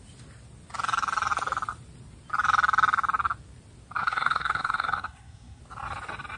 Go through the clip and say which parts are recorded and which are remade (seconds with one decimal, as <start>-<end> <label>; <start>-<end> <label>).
0.0-4.0 recorded; 4.0-5.6 remade; 5.6-6.4 recorded